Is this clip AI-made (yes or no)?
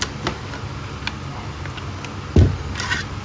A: no